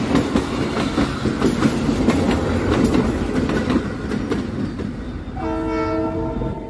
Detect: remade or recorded recorded